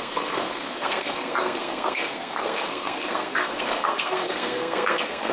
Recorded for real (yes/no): no